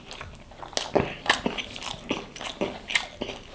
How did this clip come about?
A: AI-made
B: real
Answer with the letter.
B